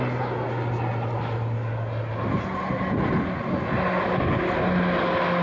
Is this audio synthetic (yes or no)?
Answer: no